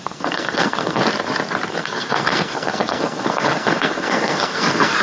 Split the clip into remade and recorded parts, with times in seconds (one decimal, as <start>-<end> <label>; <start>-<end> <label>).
0.0-1.0 remade; 1.0-1.7 recorded; 1.7-5.0 remade